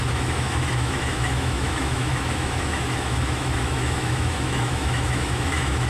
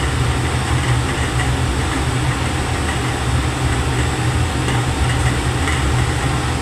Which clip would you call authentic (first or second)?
second